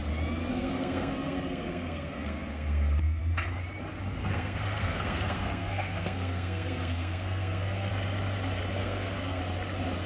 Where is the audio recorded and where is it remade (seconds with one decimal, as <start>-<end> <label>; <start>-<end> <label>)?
0.0-0.5 recorded; 0.5-3.2 remade; 3.2-4.2 recorded; 4.2-7.9 remade; 7.9-8.8 recorded; 8.8-9.4 remade; 9.4-10.1 recorded